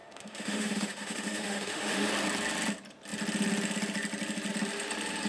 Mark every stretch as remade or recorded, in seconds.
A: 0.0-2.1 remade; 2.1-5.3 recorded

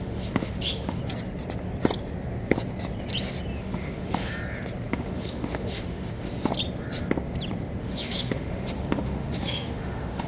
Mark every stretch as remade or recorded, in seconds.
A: 0.0-1.0 remade; 1.0-3.6 recorded; 3.6-4.3 remade; 4.3-4.9 recorded; 4.9-6.5 remade; 6.5-7.8 recorded; 7.8-10.3 remade

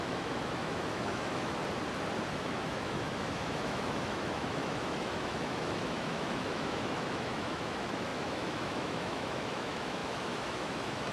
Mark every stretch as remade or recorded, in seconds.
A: 0.0-1.6 remade; 1.6-2.3 recorded; 2.3-11.1 remade

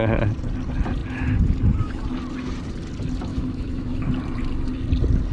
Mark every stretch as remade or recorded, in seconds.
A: 0.0-3.3 recorded; 3.3-4.0 remade; 4.0-5.3 recorded